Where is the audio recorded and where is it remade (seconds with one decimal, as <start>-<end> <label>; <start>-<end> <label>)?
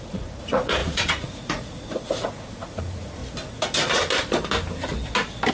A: 0.0-3.2 remade; 3.2-5.5 recorded